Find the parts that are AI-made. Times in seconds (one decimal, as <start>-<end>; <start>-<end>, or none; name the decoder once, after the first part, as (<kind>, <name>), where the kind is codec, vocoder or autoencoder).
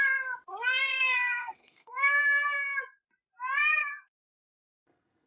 0.9-2.2 (codec, SNAC); 3.8-5.3